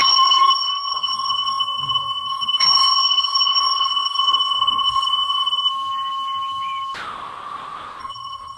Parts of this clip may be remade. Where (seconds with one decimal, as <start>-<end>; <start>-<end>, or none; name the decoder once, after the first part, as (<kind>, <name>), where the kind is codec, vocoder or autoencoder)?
0.0-5.7 (codec, SNAC); 8.0-8.6